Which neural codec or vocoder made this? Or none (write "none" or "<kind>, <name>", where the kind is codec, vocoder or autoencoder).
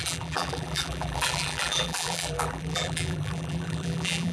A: vocoder, BigVGAN v2